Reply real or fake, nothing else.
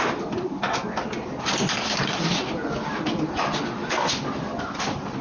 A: real